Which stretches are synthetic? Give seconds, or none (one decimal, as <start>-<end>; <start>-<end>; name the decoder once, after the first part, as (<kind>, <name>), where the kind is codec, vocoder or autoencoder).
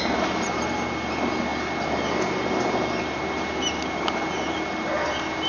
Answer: none